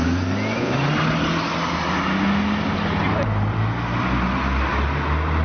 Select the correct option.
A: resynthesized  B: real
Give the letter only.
B